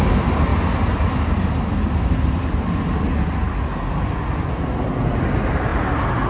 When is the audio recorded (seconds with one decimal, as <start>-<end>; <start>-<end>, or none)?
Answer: 0.0-0.5; 1.2-6.3